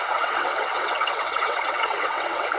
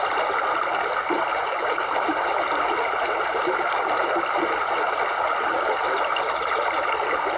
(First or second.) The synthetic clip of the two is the first